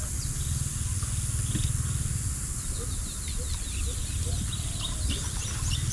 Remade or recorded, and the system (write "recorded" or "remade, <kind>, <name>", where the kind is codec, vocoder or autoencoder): recorded